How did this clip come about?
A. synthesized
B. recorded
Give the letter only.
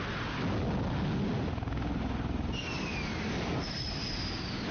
B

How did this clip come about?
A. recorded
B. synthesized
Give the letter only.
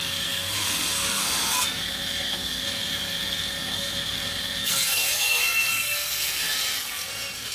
B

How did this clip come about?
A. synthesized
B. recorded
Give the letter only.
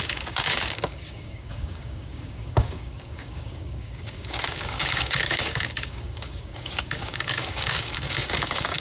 A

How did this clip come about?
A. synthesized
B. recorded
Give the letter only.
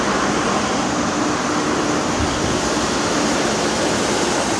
B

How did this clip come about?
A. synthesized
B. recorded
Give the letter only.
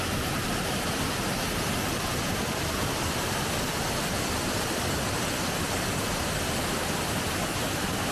A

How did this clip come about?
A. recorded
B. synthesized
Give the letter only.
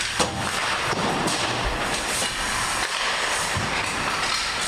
A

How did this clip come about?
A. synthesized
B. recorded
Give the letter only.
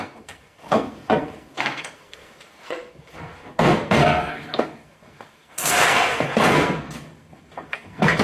A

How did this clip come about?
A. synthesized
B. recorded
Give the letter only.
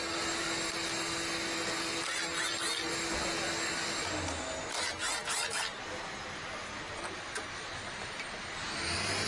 B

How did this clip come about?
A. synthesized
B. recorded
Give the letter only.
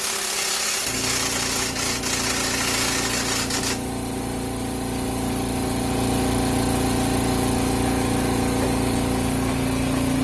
B